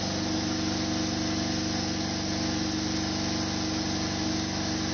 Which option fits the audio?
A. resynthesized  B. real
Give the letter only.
B